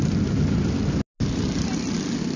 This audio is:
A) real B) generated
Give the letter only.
A